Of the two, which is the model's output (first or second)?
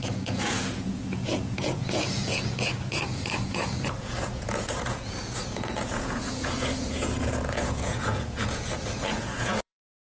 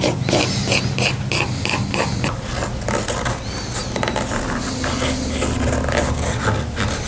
first